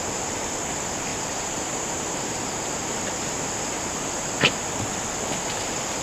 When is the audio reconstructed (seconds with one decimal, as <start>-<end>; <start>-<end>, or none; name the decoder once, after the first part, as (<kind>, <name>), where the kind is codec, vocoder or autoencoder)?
1.1-4.7 (vocoder, BigVGAN v2)

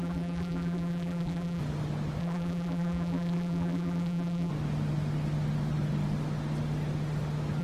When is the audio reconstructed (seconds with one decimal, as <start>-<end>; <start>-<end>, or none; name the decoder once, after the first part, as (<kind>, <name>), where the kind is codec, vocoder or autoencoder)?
0.0-1.6 (vocoder, BigVGAN v2); 2.2-4.5

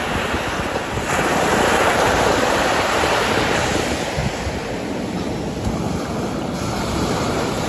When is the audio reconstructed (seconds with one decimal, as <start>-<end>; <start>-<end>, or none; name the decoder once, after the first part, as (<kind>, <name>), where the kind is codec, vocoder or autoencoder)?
0.0-4.2 (vocoder, BigVGAN v2); 6.3-7.7

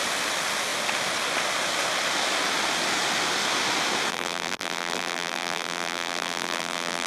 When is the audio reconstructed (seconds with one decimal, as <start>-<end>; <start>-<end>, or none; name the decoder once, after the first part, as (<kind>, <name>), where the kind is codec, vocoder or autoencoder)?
4.1-7.1 (vocoder, BigVGAN v2)

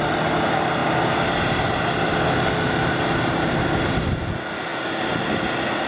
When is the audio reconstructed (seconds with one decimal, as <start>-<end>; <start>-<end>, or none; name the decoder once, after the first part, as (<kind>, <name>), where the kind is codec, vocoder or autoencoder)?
none

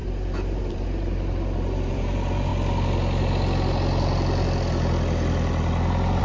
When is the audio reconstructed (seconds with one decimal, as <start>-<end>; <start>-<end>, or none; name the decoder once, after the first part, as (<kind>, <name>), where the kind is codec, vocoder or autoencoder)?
0.0-2.5 (vocoder, BigVGAN v2)

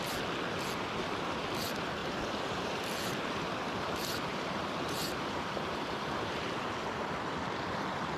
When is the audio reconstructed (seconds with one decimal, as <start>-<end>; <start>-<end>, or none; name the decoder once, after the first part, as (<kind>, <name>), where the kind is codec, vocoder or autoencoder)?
2.0-6.6 (vocoder, BigVGAN v2)

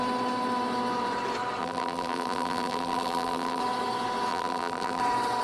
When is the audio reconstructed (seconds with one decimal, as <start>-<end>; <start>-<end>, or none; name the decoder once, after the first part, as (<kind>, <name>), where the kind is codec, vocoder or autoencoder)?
1.6-3.6 (vocoder, BigVGAN v2); 4.3-5.0